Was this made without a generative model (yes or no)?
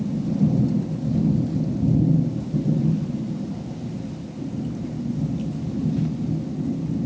yes